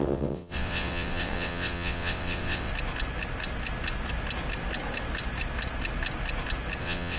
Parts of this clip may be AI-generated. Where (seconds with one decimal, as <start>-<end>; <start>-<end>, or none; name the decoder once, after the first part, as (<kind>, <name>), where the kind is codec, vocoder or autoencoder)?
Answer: 0.0-2.7 (vocoder, WaveNeXt); 6.8-7.2